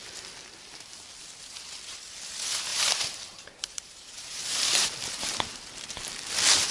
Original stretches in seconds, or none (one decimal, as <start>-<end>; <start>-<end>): 0.0-2.7; 5.3-6.7